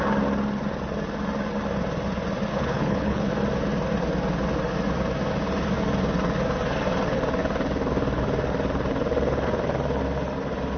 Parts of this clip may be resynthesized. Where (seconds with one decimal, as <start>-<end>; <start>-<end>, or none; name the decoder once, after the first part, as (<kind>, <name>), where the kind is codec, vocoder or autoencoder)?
2.5-3.3 (codec, HILCodec)